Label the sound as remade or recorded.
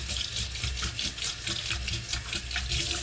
recorded